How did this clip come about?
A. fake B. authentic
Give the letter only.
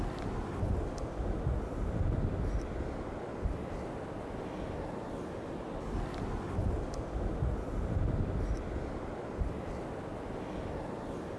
B